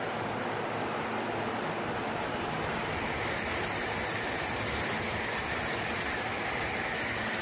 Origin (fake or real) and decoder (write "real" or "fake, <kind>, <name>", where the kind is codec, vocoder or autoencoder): real